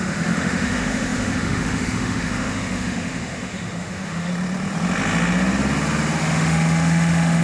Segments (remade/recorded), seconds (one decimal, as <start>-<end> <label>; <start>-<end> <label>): 0.0-4.3 remade; 4.3-6.2 recorded; 6.2-7.4 remade

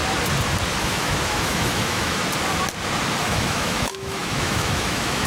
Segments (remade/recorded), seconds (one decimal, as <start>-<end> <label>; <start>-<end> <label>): 0.0-0.8 recorded; 0.8-2.2 remade; 2.2-3.2 recorded; 3.2-5.3 remade

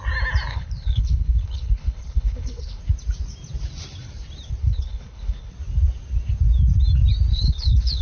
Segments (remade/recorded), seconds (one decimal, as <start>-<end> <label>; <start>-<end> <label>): 0.0-0.5 recorded; 0.5-2.8 remade; 2.8-4.6 recorded; 4.6-5.5 remade; 5.5-7.3 recorded; 7.3-8.0 remade

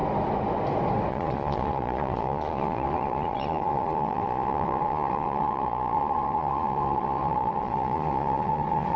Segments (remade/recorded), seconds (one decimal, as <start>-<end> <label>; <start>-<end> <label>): 0.0-1.1 recorded; 1.1-9.0 remade